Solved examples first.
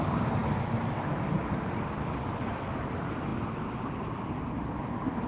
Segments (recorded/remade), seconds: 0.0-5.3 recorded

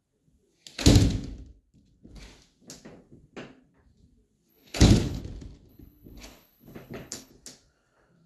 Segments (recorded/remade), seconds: 0.0-4.5 recorded; 4.5-5.2 remade; 5.2-5.7 recorded; 5.7-7.3 remade; 7.3-8.3 recorded